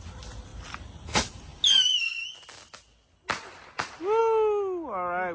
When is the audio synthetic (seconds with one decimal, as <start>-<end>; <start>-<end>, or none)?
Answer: none